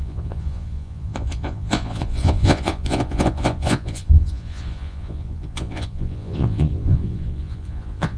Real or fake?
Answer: fake